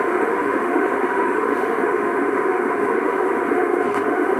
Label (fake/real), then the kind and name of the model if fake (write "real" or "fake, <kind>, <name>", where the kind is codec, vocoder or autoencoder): fake, autoencoder, DAC-VAE